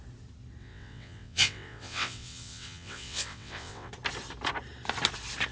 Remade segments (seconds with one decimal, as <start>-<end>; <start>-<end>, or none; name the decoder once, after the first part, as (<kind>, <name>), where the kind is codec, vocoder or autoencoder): 0.6-3.9 (vocoder, WaveNeXt)